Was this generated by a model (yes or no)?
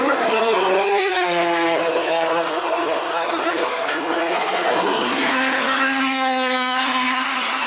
yes